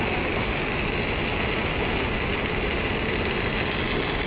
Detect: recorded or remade recorded